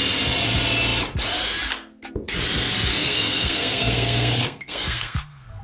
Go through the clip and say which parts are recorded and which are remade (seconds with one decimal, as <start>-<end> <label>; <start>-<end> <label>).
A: 0.0-2.9 recorded; 2.9-5.6 remade